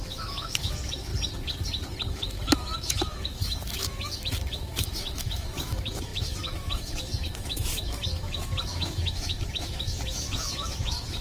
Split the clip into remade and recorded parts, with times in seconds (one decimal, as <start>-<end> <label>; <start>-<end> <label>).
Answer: 0.0-1.1 remade; 1.1-2.1 recorded; 2.1-11.2 remade